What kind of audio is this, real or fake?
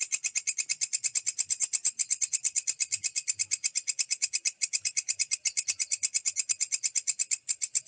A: real